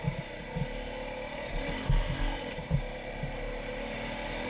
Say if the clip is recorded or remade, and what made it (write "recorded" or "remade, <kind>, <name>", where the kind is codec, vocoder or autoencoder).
recorded